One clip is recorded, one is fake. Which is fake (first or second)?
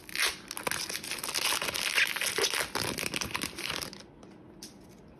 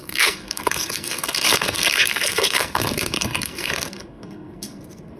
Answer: second